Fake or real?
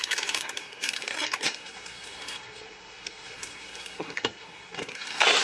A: fake